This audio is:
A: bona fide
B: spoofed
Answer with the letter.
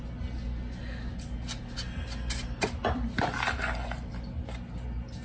A